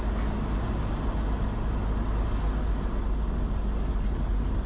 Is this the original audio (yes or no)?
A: yes